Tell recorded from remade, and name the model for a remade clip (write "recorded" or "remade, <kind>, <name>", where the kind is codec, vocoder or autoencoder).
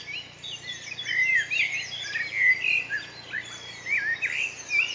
recorded